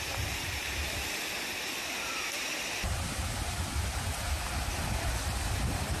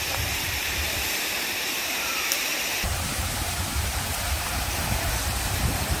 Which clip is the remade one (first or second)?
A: second